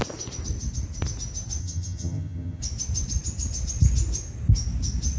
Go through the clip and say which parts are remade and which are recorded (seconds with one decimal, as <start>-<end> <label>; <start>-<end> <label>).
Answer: 0.0-1.6 recorded; 1.6-2.6 remade; 2.6-5.2 recorded